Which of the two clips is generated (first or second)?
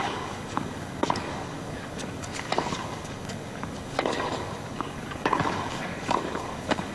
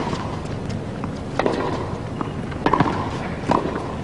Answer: first